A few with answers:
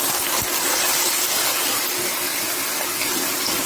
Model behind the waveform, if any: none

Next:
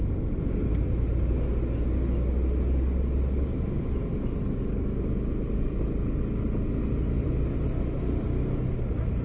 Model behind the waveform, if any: none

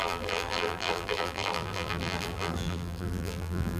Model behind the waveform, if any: vocoder, BigVGAN v2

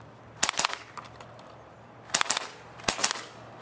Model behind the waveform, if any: none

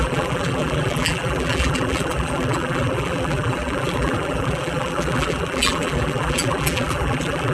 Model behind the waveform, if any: vocoder, BigVGAN v2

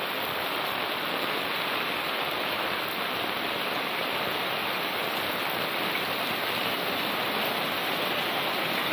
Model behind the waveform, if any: none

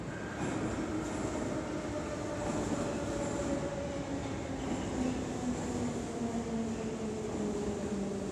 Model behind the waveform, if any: none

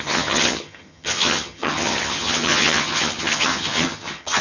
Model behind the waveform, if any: vocoder, HiFi-GAN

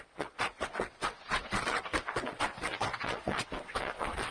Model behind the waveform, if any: vocoder, WaveNeXt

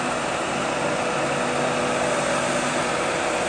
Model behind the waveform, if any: none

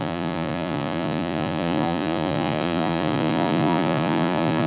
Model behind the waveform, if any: vocoder, Vocos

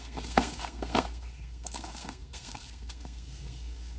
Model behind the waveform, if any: codec, SNAC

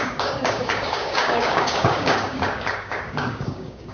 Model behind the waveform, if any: codec, DAC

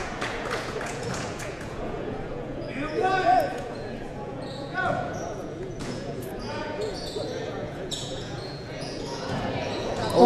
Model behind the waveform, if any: vocoder, Vocos